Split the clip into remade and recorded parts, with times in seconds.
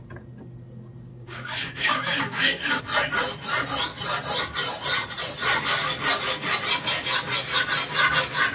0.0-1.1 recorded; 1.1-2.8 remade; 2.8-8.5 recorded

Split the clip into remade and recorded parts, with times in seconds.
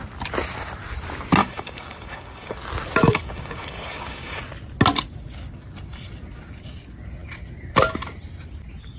0.0-1.4 recorded; 1.4-2.6 remade; 2.6-3.0 recorded; 3.0-4.4 remade; 4.4-9.0 recorded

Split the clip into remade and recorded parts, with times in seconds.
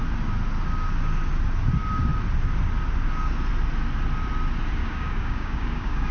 0.0-4.8 recorded; 4.8-6.1 remade